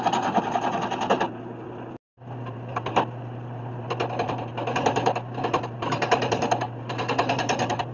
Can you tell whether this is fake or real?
real